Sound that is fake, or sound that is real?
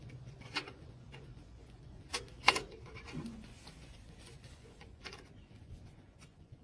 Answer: fake